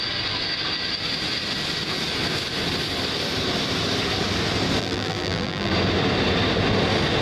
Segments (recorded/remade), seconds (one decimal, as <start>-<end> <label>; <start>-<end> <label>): 0.0-4.8 recorded; 4.8-5.7 remade; 5.7-7.2 recorded